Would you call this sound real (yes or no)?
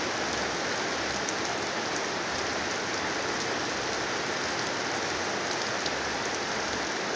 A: yes